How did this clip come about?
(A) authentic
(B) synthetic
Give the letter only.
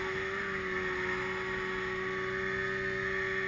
A